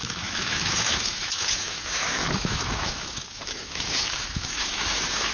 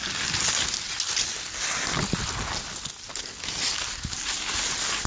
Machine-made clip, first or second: first